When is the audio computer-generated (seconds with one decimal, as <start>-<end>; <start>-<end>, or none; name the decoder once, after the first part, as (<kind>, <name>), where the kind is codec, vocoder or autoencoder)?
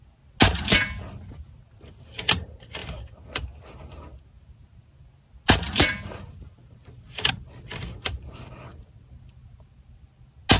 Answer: none